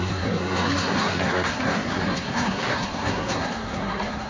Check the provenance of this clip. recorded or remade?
remade